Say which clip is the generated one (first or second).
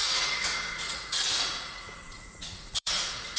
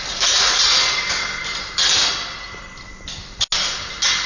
first